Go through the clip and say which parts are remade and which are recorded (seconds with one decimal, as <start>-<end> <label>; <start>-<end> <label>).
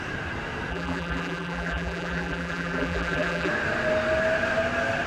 0.0-0.7 recorded; 0.7-3.5 remade; 3.5-5.1 recorded